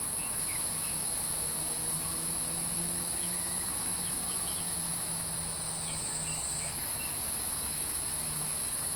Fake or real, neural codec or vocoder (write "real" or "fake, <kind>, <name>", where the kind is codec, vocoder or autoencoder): fake, autoencoder, DAC-VAE